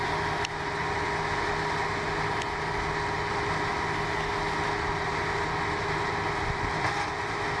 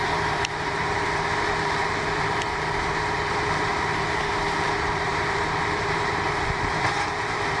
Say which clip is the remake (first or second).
second